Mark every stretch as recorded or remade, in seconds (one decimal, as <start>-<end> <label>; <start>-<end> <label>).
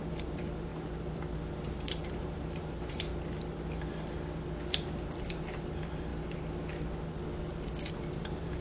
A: 0.0-0.7 remade; 0.7-1.4 recorded; 1.4-3.1 remade; 3.1-4.7 recorded; 4.7-6.1 remade; 6.1-7.9 recorded; 7.9-8.6 remade